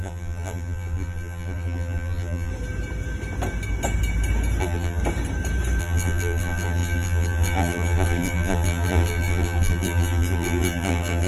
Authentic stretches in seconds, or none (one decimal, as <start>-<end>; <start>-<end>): 2.5-4.6; 5.0-5.8